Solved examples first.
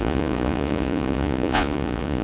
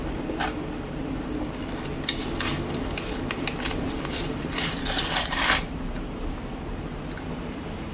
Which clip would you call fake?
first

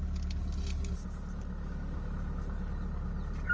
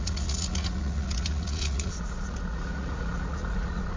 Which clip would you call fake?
second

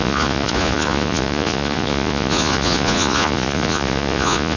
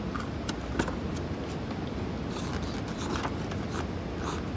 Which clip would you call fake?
first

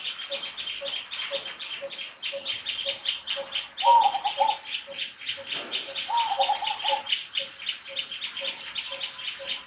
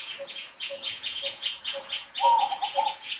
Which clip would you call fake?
second